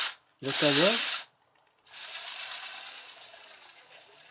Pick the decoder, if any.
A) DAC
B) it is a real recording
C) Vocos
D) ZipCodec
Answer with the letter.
B